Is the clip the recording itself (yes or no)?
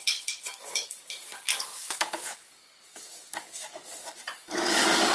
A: no